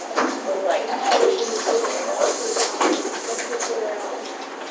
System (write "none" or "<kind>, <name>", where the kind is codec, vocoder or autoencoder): none